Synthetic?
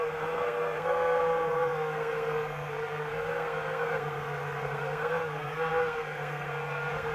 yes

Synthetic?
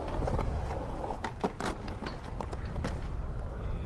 no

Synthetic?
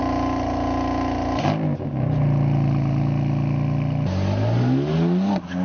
no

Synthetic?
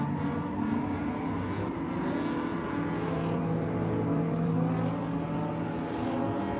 no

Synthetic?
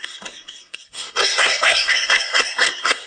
yes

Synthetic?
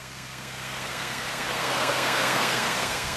yes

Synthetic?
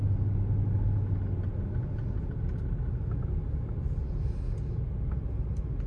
no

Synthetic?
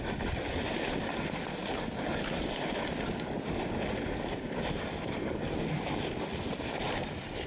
no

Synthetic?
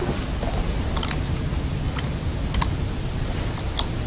no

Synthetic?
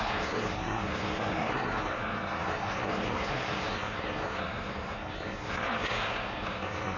yes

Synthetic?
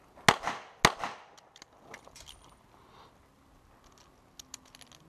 no